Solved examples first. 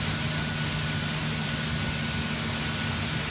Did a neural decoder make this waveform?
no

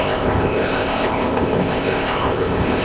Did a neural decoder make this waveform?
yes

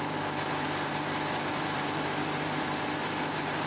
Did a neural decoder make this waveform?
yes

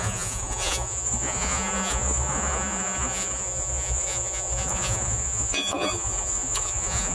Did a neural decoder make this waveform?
yes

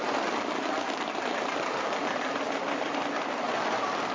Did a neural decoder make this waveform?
no